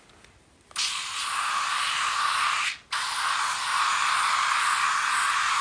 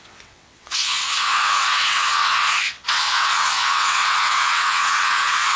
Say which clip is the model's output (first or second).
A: second